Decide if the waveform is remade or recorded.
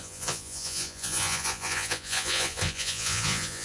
remade